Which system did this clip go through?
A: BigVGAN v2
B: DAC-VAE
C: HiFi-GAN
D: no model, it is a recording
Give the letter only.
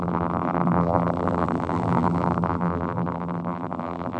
A